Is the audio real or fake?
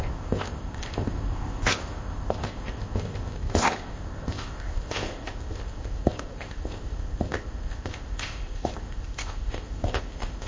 fake